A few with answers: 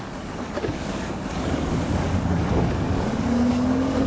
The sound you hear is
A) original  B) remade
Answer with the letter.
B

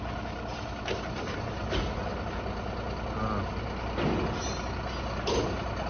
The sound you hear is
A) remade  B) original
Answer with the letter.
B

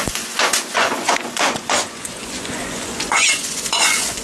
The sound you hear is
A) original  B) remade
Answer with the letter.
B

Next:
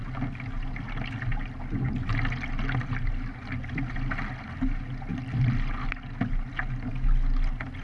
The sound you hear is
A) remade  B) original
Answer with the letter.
B